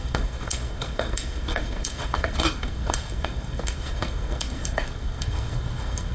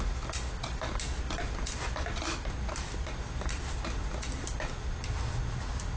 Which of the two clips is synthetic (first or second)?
first